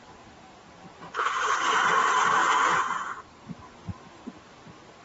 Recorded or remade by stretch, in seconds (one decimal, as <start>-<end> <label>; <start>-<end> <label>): 0.0-5.0 recorded